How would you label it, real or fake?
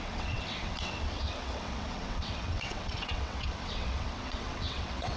fake